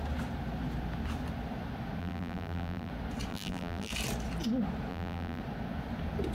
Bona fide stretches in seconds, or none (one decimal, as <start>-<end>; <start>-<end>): 0.0-2.0; 2.9-3.3; 3.9-4.9; 5.4-6.3

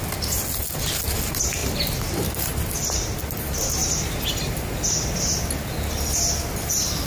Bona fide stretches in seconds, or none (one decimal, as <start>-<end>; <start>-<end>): 0.0-1.6; 2.5-7.1

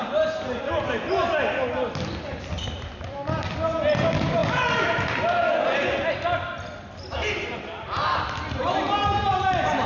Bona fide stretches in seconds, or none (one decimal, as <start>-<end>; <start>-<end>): 0.0-9.9

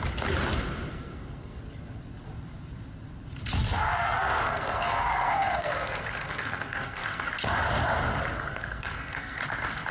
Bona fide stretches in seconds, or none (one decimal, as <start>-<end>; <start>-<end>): 0.0-0.9; 1.6-3.9; 7.3-8.5; 9.4-9.9

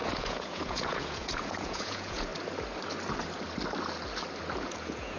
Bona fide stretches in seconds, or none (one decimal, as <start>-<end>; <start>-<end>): 2.3-4.6

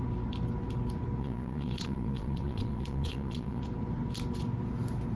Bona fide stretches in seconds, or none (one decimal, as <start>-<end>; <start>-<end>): 0.0-1.2; 3.6-5.2

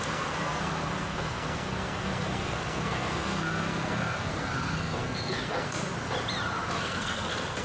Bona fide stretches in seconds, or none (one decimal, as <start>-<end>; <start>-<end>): 5.9-6.8